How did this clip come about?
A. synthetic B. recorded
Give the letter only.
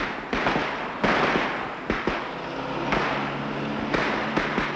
B